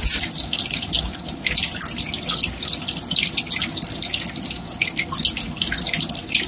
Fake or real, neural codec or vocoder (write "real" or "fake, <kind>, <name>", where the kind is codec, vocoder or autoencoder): real